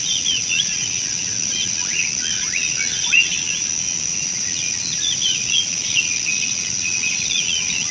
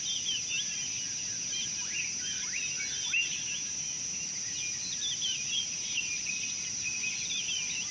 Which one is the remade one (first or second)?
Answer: first